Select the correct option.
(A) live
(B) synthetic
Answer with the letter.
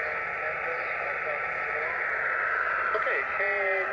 A